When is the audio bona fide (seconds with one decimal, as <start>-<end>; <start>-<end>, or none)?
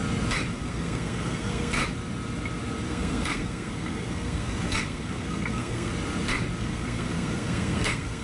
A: 0.0-0.5; 1.8-2.9; 5.9-6.6